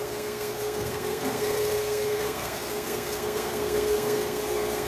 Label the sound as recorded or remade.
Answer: remade